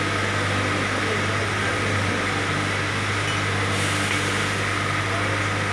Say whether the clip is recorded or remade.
recorded